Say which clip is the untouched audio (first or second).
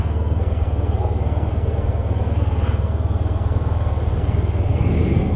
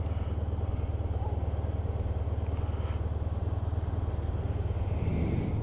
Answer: second